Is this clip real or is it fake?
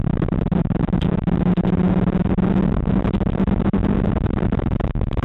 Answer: real